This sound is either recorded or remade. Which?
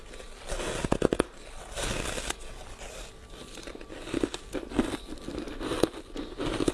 recorded